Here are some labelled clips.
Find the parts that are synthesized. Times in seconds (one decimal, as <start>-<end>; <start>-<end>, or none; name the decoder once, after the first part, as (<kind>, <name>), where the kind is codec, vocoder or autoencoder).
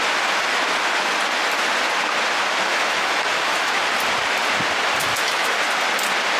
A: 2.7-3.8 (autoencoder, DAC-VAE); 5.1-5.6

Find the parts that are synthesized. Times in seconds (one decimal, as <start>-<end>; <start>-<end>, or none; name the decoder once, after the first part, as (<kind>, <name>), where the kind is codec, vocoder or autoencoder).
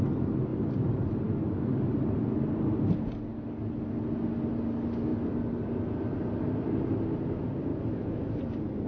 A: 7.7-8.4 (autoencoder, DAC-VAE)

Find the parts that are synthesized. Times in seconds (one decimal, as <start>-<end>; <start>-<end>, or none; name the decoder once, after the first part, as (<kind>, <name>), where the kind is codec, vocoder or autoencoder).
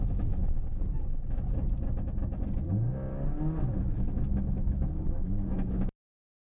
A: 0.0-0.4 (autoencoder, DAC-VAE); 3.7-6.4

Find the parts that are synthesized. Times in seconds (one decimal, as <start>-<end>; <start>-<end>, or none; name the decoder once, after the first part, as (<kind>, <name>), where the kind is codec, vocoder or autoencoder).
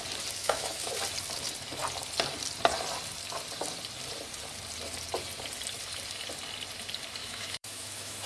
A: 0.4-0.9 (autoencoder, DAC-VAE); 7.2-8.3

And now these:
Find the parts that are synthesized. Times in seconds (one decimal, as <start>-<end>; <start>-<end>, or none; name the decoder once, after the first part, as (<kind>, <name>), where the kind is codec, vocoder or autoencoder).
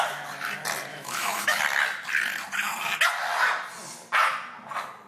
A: 0.9-1.6 (autoencoder, DAC-VAE)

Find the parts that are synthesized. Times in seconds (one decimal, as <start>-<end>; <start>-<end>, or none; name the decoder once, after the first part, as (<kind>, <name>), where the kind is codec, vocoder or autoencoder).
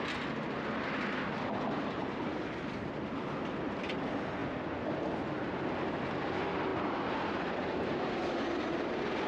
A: none